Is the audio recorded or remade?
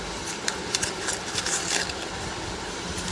remade